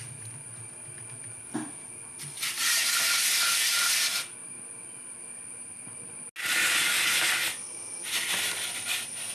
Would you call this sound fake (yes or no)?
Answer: no